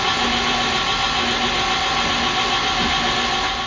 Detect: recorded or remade recorded